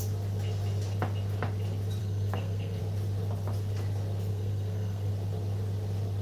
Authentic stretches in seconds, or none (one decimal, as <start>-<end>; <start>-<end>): 0.0-2.0; 2.8-4.3; 5.1-6.2